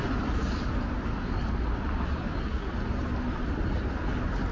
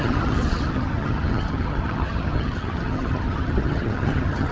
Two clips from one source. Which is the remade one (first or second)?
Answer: second